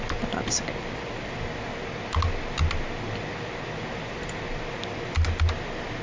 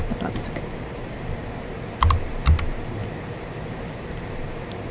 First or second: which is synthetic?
second